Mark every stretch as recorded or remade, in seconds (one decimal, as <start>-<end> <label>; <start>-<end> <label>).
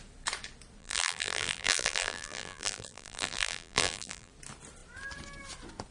0.0-0.8 recorded; 0.8-4.3 remade; 4.3-5.9 recorded